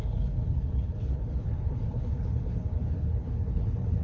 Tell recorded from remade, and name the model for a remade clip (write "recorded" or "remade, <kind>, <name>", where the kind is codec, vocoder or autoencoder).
remade, codec, HILCodec